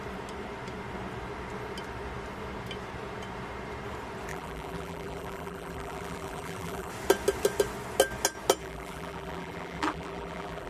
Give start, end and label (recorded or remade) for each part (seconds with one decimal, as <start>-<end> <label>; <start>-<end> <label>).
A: 0.0-4.3 recorded; 4.3-6.9 remade; 6.9-8.6 recorded; 8.6-10.7 remade